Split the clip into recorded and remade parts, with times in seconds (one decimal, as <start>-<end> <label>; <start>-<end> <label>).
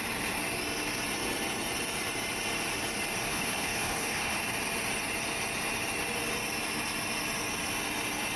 0.0-3.3 recorded; 3.3-4.4 remade; 4.4-8.4 recorded